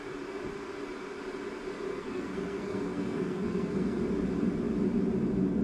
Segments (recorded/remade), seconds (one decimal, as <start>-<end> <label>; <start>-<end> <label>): 0.0-1.9 recorded; 1.9-4.0 remade; 4.0-5.6 recorded